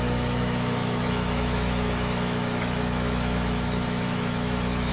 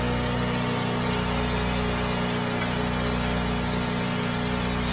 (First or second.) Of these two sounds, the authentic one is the second